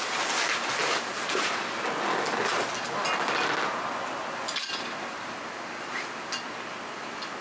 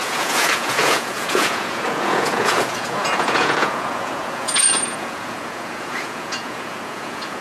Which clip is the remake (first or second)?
second